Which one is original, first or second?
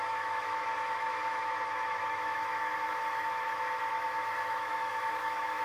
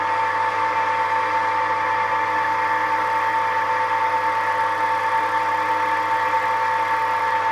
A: second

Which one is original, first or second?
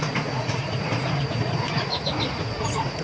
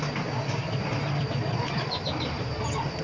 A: second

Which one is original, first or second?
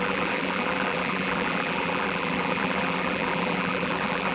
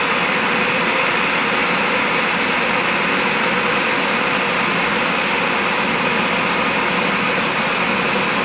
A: second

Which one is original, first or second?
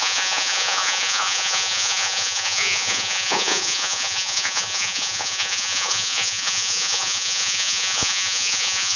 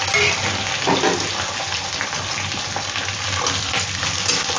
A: second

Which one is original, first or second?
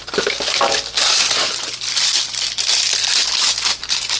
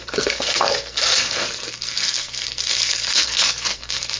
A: first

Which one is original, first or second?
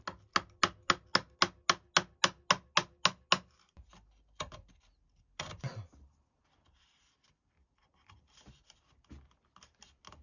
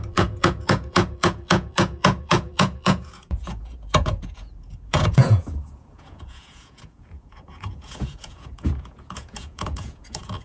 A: first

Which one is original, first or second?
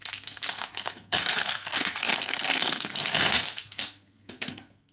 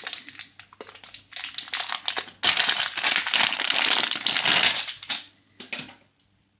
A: second